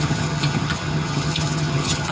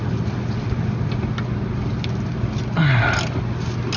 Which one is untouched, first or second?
second